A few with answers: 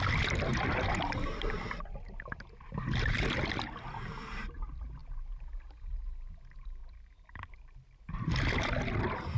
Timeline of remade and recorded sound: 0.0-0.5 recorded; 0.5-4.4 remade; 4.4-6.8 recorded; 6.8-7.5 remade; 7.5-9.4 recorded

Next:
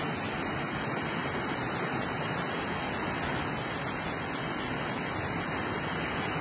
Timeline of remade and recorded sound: 0.0-1.2 recorded; 1.2-2.3 remade; 2.3-6.4 recorded

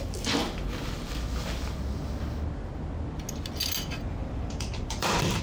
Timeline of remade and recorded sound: 0.0-4.2 recorded; 4.2-5.4 remade

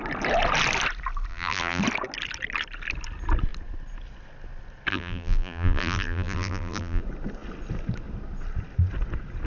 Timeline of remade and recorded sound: 0.0-1.3 recorded; 1.3-1.8 remade; 1.8-4.9 recorded; 4.9-7.0 remade; 7.0-9.5 recorded

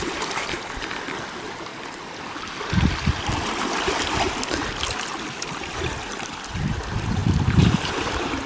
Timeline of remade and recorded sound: 0.0-1.7 remade; 1.7-2.9 recorded; 2.9-7.2 remade; 7.2-7.9 recorded; 7.9-8.5 remade

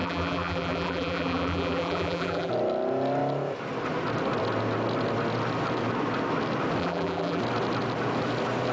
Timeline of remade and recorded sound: 0.0-2.5 remade; 2.5-6.8 recorded; 6.8-7.4 remade; 7.4-8.7 recorded